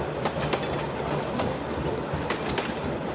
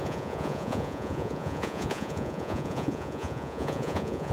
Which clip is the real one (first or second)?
first